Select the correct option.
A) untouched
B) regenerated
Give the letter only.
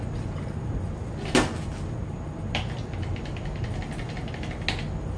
A